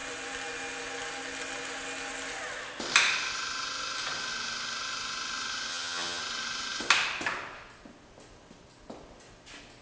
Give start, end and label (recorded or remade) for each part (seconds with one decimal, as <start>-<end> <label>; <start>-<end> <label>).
0.0-5.7 recorded; 5.7-6.2 remade; 6.2-9.8 recorded